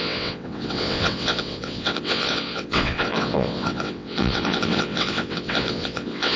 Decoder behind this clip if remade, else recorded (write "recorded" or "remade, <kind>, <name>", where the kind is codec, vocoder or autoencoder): remade, vocoder, WaveNeXt